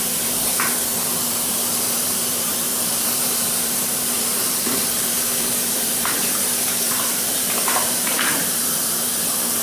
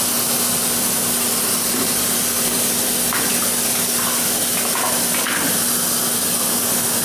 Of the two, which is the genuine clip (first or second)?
second